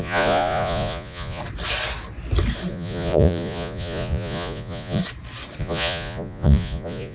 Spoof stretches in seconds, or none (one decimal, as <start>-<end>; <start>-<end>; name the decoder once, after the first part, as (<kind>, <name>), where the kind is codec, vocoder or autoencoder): 0.0-1.4 (vocoder, Vocos); 2.7-5.0; 5.6-7.1